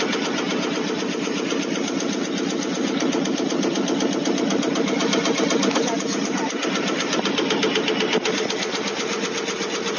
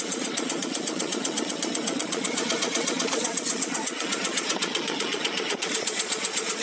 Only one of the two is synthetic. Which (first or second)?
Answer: second